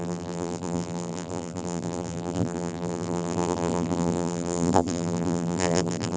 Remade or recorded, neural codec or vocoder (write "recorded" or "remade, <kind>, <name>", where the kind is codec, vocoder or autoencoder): remade, vocoder, BigVGAN v2